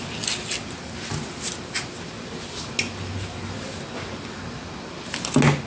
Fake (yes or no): no